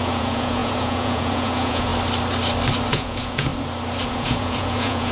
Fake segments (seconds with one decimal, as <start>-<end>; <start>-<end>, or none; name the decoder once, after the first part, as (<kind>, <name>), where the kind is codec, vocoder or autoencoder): 0.0-1.9 (vocoder, Vocos); 2.9-3.5; 4.1-5.1